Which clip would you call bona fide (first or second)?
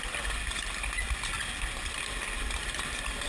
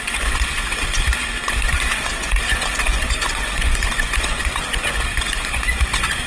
first